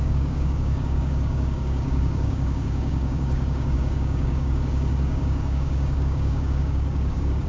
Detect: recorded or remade remade